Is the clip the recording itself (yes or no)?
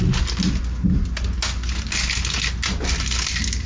yes